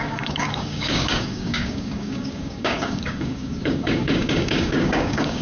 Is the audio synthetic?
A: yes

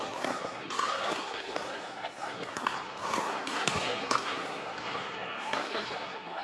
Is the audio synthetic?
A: yes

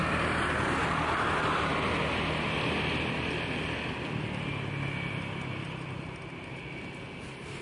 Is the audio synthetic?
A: no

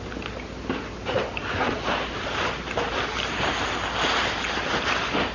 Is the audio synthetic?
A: no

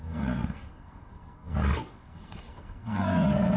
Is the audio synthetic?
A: yes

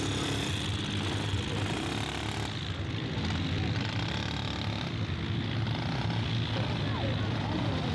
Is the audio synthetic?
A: no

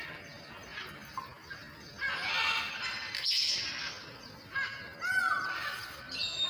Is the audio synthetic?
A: no